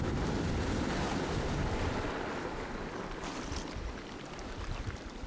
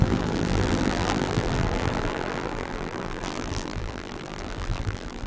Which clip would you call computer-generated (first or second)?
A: second